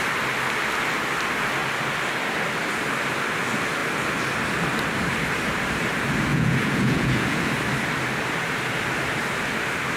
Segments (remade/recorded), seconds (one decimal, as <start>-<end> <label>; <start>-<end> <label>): 0.0-6.3 recorded; 6.3-7.5 remade; 7.5-10.0 recorded